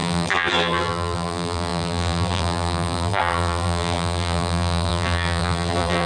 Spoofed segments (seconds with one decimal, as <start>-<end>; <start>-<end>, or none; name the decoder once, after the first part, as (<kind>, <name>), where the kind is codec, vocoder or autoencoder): 0.0-6.1 (vocoder, BigVGAN v2)